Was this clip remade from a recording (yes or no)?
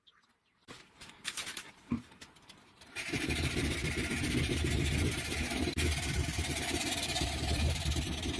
yes